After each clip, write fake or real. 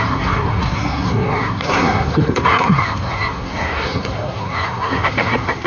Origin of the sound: fake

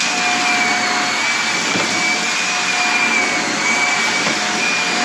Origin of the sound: real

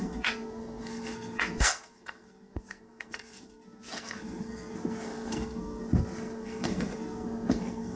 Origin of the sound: fake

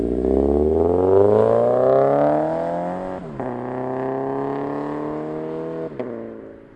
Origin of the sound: real